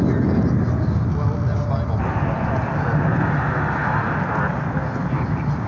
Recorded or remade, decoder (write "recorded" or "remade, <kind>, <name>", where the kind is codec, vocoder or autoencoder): recorded